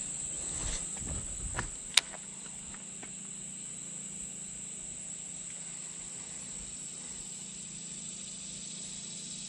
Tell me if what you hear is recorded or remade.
recorded